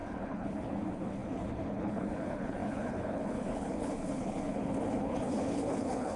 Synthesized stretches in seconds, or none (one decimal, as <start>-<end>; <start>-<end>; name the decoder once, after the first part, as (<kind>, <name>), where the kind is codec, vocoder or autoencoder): 0.0-6.2 (codec, HILCodec)